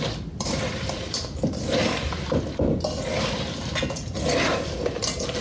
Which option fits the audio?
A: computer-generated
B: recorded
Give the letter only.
B